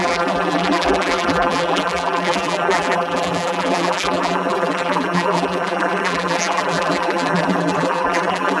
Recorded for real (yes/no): no